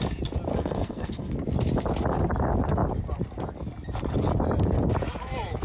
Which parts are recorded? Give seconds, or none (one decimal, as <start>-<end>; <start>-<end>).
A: 0.0-0.5; 1.3-5.6